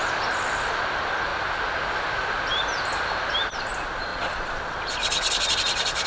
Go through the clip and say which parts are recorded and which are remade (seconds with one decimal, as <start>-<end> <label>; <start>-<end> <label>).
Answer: 0.0-4.1 recorded; 4.1-4.8 remade; 4.8-6.1 recorded

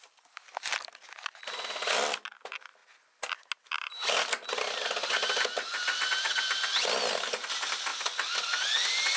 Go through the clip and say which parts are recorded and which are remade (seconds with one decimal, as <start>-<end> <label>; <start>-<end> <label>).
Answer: 0.0-9.2 recorded

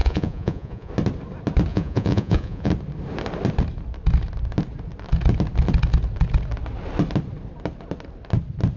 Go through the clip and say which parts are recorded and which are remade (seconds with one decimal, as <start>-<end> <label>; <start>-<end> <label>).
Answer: 0.0-0.9 remade; 0.9-1.7 recorded; 1.7-2.7 remade; 2.7-8.8 recorded